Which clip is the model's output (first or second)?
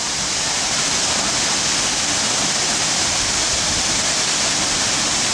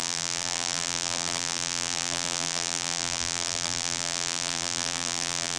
second